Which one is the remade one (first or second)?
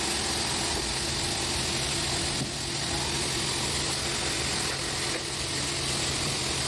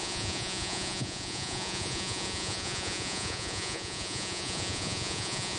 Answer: second